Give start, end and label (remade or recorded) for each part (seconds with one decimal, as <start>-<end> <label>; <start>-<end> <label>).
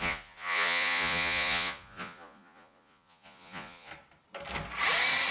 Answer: 0.0-3.9 remade; 3.9-5.3 recorded